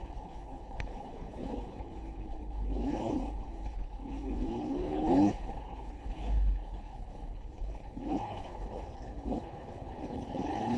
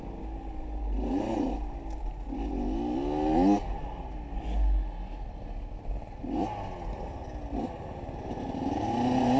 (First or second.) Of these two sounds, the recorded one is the second